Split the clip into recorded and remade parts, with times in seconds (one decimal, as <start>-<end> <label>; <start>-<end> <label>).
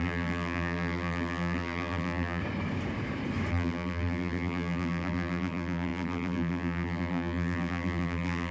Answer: 0.0-2.4 remade; 2.4-3.5 recorded; 3.5-8.5 remade